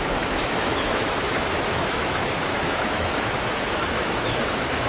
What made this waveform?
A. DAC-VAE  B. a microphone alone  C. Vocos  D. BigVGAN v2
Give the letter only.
A